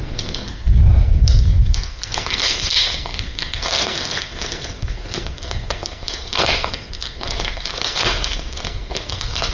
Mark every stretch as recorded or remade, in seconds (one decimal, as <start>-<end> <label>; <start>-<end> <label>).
0.0-9.5 remade